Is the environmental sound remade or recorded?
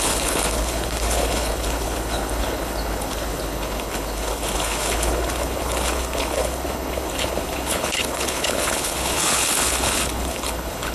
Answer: remade